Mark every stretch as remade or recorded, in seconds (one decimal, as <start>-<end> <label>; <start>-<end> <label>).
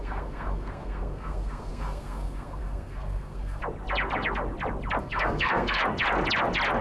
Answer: 0.0-3.6 remade; 3.6-5.0 recorded; 5.0-5.8 remade; 5.8-6.8 recorded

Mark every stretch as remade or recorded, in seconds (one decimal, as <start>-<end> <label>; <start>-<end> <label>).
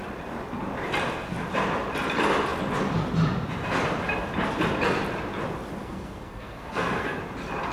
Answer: 0.0-5.8 recorded; 5.8-7.2 remade; 7.2-7.7 recorded